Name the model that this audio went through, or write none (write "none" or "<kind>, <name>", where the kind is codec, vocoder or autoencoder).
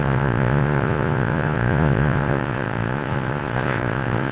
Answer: vocoder, Vocos